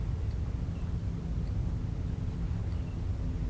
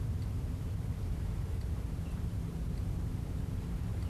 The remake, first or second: second